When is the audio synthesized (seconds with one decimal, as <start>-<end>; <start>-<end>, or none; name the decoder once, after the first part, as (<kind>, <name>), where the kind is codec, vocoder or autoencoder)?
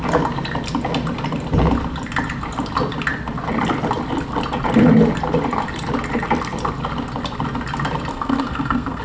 8.1-9.0 (codec, SNAC)